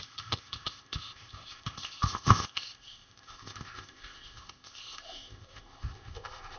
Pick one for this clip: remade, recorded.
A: remade